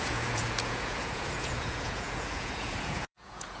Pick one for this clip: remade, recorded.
remade